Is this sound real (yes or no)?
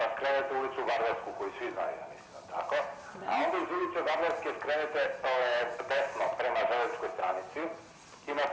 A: yes